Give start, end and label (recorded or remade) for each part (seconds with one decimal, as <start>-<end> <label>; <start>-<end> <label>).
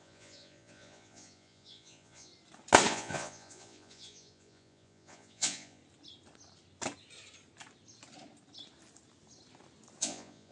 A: 0.0-2.3 remade; 2.3-2.9 recorded; 2.9-5.8 remade; 5.8-10.0 recorded; 10.0-10.5 remade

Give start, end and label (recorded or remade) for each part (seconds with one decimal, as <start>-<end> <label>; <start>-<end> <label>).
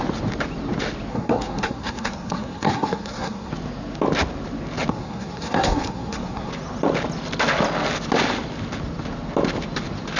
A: 0.0-1.1 recorded; 1.1-3.5 remade; 3.5-4.9 recorded; 4.9-6.5 remade; 6.5-10.2 recorded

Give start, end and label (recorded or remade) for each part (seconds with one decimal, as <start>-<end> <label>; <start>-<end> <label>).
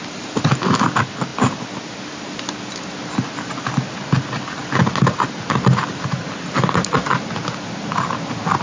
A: 0.0-8.6 recorded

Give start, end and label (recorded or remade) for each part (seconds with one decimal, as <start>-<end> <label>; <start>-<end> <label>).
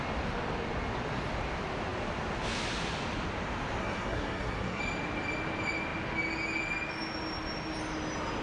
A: 0.0-3.8 recorded; 3.8-4.8 remade; 4.8-8.4 recorded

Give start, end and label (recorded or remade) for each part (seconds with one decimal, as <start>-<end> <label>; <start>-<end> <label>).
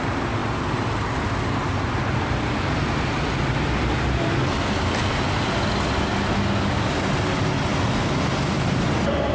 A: 0.0-7.7 recorded; 7.7-9.3 remade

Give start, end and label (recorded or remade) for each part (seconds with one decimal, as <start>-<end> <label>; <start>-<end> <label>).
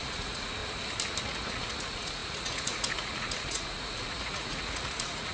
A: 0.0-0.6 remade; 0.6-1.2 recorded; 1.2-5.3 remade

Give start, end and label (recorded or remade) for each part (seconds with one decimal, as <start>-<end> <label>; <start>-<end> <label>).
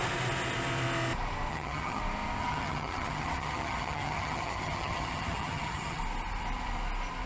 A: 0.0-1.5 recorded; 1.5-2.0 remade; 2.0-2.4 recorded; 2.4-6.0 remade; 6.0-7.3 recorded